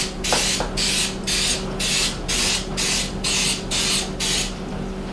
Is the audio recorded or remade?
recorded